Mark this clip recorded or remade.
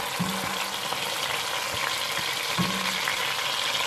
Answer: recorded